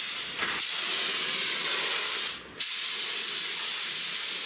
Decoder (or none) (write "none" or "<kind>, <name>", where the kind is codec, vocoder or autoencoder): vocoder, BigVGAN v2